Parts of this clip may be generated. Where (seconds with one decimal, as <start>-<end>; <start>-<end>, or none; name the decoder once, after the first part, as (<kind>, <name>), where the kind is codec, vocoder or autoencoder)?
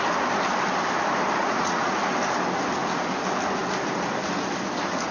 1.4-2.0 (vocoder, Vocos)